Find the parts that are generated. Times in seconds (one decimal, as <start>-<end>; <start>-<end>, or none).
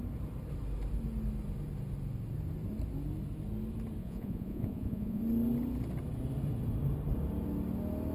4.0-5.2